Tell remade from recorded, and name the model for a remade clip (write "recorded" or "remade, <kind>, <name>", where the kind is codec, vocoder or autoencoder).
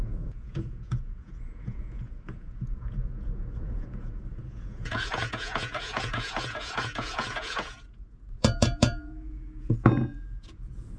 remade, vocoder, Vocos